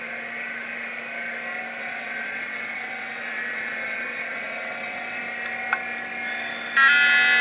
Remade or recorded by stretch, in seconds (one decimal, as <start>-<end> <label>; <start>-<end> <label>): 0.0-1.8 recorded; 1.8-5.2 remade; 5.2-7.4 recorded